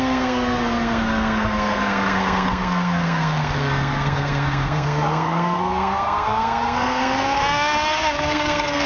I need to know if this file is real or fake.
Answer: fake